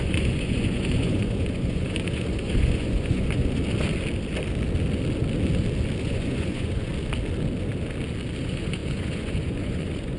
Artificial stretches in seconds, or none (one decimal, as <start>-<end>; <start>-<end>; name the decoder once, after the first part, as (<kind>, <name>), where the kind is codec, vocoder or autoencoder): 0.0-3.4 (vocoder, Vocos); 6.0-6.9; 8.4-10.2

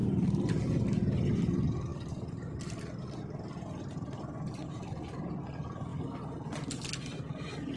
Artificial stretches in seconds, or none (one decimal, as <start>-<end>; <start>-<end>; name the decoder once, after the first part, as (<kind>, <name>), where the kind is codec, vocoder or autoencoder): 1.9-2.6 (vocoder, BigVGAN v2)

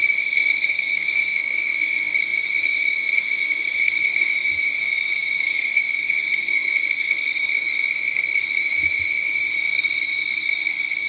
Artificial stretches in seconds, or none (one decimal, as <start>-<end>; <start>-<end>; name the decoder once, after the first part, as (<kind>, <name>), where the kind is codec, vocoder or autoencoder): 0.0-4.3 (codec, SNAC); 4.8-8.6; 9.6-11.1